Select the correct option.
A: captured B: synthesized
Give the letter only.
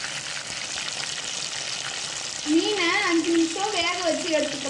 A